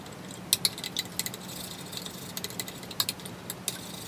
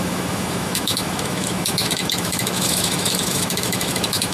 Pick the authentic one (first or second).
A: first